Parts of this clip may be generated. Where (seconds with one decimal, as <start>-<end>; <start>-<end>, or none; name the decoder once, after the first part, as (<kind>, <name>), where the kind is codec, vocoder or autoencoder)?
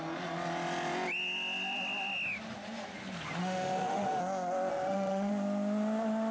3.4-4.2 (autoencoder, DAC-VAE); 4.7-5.3